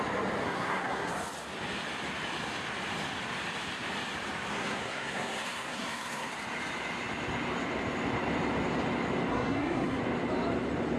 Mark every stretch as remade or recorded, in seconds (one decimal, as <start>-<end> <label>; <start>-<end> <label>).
0.0-0.4 recorded; 0.4-1.1 remade; 1.1-4.5 recorded; 4.5-6.3 remade; 6.3-9.3 recorded; 9.3-10.0 remade; 10.0-11.0 recorded